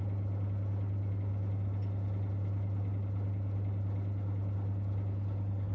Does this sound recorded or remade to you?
recorded